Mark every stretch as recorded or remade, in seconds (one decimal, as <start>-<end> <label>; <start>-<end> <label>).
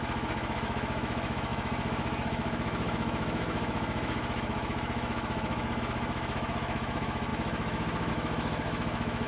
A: 0.0-9.3 remade